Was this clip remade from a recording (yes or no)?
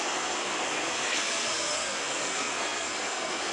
yes